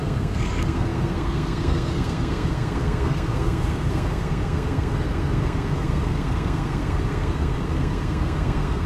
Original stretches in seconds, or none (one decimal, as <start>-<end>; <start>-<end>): none